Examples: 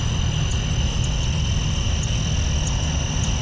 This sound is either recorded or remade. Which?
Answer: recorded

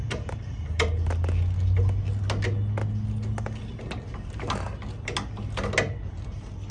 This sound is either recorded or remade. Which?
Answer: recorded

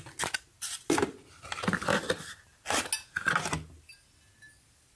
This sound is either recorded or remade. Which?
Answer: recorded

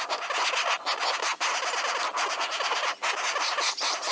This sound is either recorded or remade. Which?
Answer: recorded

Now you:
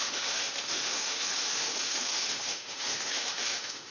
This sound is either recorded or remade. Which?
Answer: remade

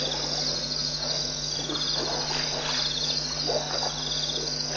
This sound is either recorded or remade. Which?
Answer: recorded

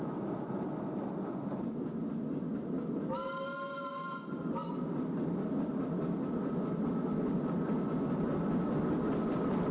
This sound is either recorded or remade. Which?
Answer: recorded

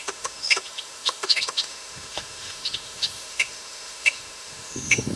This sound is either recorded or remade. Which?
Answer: remade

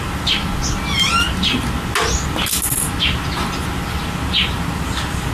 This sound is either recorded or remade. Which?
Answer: recorded